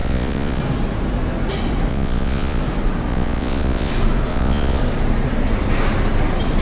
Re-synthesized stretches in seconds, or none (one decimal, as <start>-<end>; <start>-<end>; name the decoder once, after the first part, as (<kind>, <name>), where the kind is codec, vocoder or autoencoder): 0.0-0.6 (vocoder, Vocos); 1.9-2.6; 3.1-3.9; 4.3-4.8